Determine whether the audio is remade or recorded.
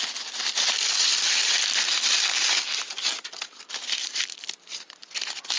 recorded